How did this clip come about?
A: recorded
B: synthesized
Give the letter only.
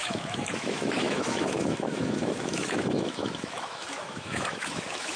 B